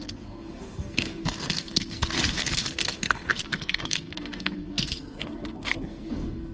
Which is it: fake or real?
fake